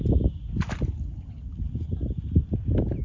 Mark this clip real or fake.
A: real